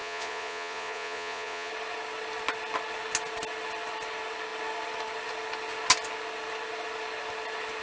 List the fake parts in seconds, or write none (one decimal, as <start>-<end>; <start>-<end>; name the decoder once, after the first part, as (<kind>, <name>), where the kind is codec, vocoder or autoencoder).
0.0-1.7 (vocoder, Vocos)

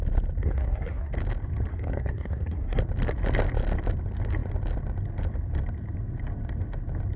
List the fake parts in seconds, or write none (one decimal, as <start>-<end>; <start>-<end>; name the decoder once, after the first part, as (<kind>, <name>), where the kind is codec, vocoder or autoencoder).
0.4-1.1 (codec, SNAC); 1.7-2.8

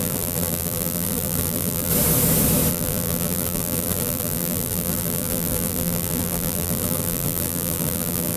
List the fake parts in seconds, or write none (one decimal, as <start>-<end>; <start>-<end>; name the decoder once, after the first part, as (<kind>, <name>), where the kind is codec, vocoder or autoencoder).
0.0-1.9 (vocoder, BigVGAN v2); 2.7-8.4

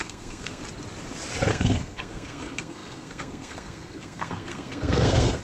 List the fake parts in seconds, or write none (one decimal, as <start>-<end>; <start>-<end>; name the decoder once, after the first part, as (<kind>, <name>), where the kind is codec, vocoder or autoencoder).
0.0-0.6 (codec, SNAC); 1.5-5.4

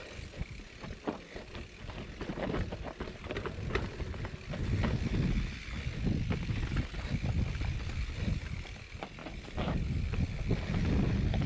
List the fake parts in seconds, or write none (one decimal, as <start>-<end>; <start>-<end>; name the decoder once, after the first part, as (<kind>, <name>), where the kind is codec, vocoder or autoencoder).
none

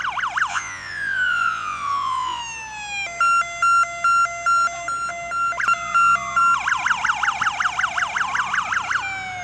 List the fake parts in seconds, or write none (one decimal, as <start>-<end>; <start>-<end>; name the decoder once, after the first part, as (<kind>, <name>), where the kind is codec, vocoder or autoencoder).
0.5-2.4 (vocoder, Vocos)